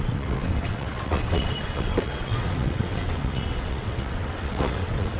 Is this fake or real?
fake